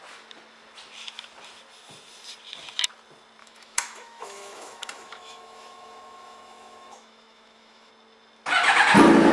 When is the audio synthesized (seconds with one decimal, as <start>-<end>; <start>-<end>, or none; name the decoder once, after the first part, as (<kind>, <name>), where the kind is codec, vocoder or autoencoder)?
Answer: 3.4-7.9 (autoencoder, DAC-VAE)